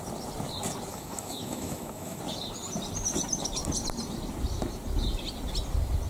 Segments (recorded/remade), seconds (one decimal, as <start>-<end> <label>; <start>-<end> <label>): 0.0-0.9 recorded; 0.9-2.2 remade; 2.2-6.1 recorded